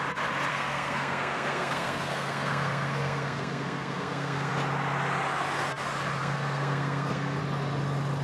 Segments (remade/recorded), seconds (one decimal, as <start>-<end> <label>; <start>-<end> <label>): 0.0-0.5 recorded; 0.5-4.5 remade; 4.5-6.2 recorded; 6.2-7.4 remade; 7.4-8.2 recorded